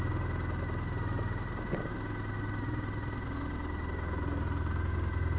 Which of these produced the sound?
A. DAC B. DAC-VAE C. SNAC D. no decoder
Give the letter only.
D